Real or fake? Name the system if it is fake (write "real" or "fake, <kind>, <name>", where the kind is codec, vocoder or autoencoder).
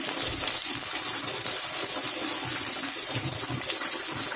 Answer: real